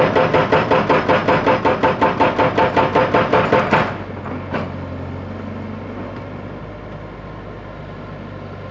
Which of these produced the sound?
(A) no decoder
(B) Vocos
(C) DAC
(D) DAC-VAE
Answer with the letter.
A